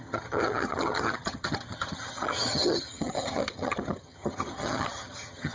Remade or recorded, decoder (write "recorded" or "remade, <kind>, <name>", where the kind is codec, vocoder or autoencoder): remade, vocoder, HiFi-GAN